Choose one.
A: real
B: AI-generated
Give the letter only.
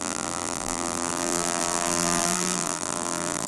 B